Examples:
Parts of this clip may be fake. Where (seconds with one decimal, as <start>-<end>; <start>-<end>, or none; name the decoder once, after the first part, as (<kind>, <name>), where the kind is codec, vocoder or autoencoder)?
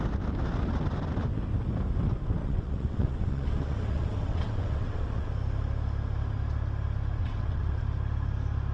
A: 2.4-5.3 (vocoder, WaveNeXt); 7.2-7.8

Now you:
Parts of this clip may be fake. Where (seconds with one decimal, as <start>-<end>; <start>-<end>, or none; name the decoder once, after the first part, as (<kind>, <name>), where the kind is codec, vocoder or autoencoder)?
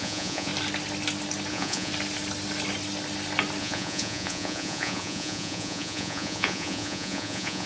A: 0.0-0.5 (vocoder, Vocos); 1.5-1.9; 3.6-7.7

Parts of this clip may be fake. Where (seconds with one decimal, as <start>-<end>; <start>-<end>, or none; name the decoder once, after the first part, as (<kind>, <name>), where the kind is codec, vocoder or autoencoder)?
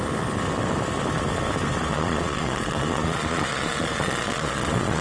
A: 1.8-5.0 (vocoder, Vocos)